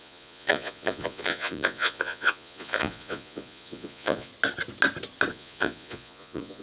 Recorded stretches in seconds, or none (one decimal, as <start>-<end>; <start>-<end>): 4.3-5.3